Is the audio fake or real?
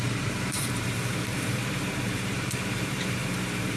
fake